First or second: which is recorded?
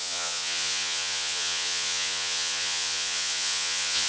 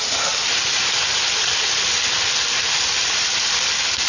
second